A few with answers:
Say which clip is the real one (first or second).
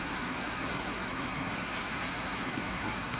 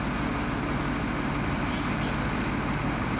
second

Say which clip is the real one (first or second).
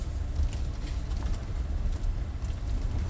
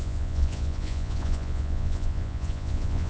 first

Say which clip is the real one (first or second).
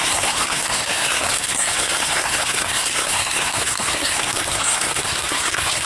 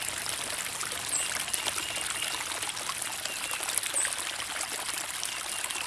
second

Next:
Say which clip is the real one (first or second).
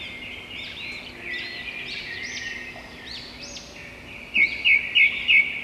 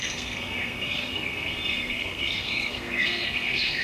first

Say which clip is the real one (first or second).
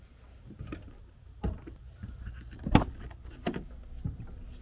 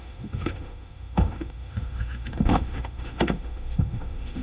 first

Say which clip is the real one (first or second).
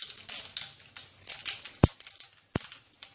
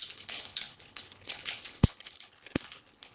first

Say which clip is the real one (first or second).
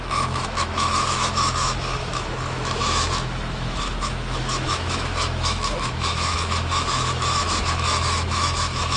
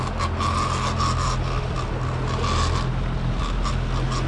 second